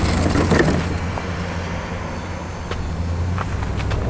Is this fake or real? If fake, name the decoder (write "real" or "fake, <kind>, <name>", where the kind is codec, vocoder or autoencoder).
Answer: real